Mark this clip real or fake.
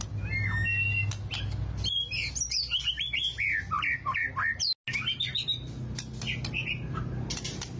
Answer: real